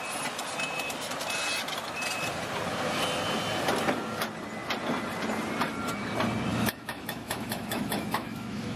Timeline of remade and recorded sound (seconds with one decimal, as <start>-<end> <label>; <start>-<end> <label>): 0.0-6.5 recorded; 6.5-8.8 remade